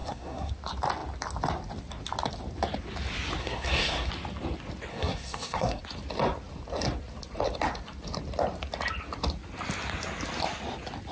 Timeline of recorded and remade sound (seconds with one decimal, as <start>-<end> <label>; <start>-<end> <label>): 0.0-0.5 remade; 0.5-3.4 recorded; 3.4-4.1 remade; 4.1-4.9 recorded; 4.9-5.8 remade; 5.8-11.1 recorded